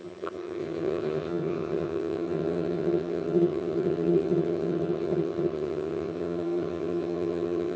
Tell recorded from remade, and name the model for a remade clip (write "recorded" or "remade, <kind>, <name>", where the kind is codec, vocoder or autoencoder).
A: remade, vocoder, HiFi-GAN